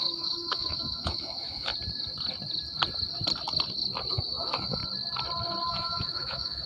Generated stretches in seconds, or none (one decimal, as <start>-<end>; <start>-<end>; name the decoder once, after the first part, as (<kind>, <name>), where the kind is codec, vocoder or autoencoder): 0.0-1.7 (autoencoder, DAC-VAE); 4.1-4.8; 5.7-6.7